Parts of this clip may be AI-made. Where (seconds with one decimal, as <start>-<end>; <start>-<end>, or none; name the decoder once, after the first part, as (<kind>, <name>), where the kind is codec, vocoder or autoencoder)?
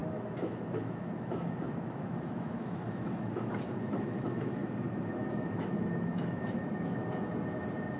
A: 0.0-4.6 (autoencoder, DAC-VAE); 5.2-7.0